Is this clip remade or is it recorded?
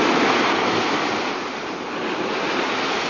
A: recorded